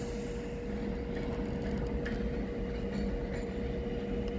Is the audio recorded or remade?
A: recorded